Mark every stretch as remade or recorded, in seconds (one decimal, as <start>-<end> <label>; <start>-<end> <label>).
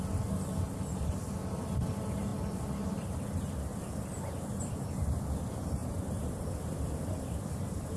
0.0-8.0 recorded